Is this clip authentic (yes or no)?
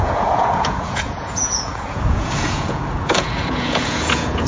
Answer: no